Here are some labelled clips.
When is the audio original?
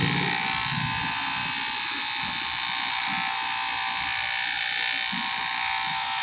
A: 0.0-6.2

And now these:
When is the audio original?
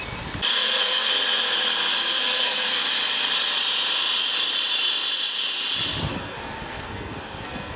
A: 0.0-0.5; 1.1-2.0; 2.9-6.1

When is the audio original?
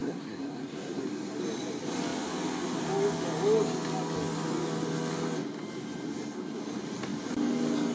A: 1.0-7.9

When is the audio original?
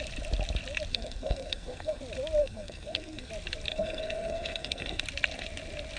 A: 0.0-0.9; 2.0-2.4; 3.3-3.7; 5.0-6.0